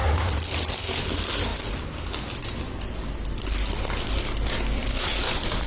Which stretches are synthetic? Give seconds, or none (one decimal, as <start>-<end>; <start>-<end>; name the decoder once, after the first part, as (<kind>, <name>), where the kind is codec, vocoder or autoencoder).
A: 0.0-0.8 (vocoder, BigVGAN v2); 4.8-5.7